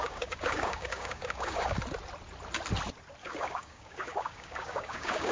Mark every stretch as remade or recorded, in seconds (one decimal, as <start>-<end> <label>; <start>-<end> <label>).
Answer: 0.0-1.8 remade; 1.8-3.2 recorded; 3.2-5.3 remade